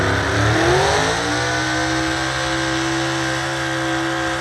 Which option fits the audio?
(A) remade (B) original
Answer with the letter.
B